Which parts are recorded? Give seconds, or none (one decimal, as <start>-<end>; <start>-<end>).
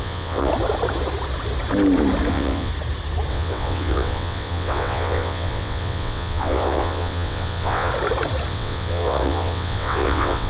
0.5-2.3; 2.7-3.3; 7.9-8.5